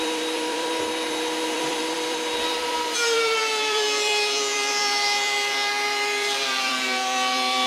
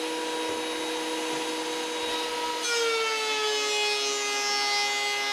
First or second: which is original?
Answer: second